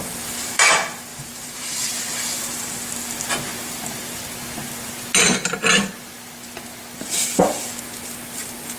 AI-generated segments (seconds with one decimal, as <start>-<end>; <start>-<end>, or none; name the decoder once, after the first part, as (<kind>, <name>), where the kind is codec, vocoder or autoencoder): 1.1-1.9 (vocoder, BigVGAN v2)